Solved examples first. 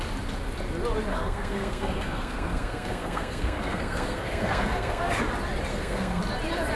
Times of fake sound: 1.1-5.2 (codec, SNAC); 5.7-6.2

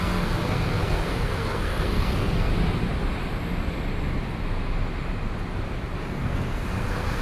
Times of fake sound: 0.0-2.5 (codec, SNAC); 6.0-7.2